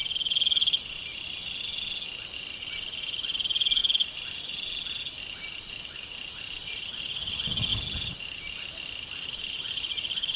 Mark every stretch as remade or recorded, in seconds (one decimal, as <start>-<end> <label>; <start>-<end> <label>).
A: 0.0-10.4 recorded